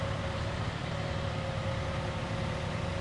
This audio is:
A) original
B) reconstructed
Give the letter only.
A